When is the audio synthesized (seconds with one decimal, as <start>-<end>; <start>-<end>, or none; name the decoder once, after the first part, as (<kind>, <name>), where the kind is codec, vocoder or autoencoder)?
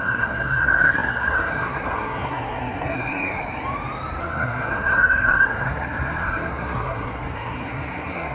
0.0-3.4 (codec, SNAC); 4.2-8.3